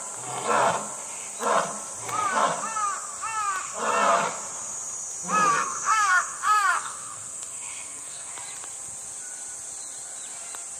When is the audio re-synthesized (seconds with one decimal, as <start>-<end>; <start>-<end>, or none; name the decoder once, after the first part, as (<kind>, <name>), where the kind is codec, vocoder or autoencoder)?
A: 5.5-8.3 (codec, SNAC)